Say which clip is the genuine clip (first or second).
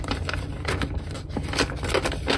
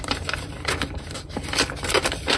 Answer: first